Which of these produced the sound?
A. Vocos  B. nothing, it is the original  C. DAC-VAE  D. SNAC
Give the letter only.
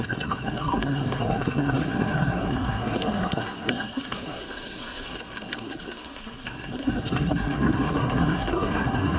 D